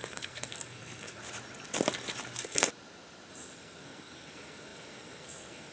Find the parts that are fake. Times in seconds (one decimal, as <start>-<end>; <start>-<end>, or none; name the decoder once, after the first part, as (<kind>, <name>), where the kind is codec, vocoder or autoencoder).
0.0-1.2 (codec, SNAC); 2.3-2.7; 3.3-5.7